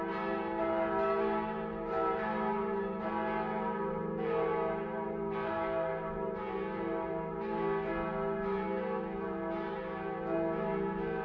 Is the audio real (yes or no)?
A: yes